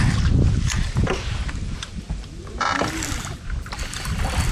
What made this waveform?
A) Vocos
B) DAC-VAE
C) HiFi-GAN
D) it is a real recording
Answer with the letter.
D